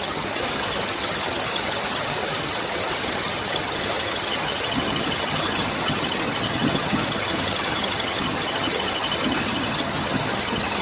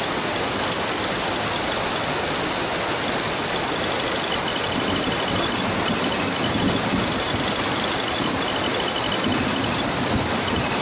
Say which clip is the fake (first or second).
first